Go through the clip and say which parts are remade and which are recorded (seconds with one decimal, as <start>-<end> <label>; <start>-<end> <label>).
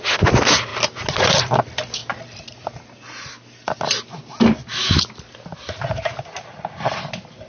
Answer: 0.0-7.5 recorded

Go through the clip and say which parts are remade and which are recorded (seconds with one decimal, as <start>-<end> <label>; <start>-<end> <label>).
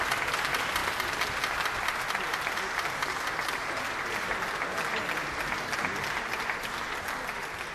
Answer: 0.0-7.7 recorded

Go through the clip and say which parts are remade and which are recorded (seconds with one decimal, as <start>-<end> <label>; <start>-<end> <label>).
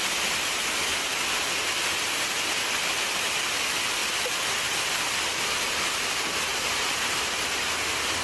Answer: 0.0-6.5 recorded; 6.5-7.6 remade; 7.6-8.2 recorded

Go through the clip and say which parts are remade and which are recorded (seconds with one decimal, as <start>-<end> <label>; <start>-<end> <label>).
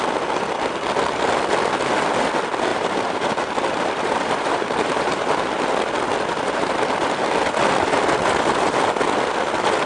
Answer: 0.0-2.7 recorded; 2.7-5.5 remade; 5.5-9.9 recorded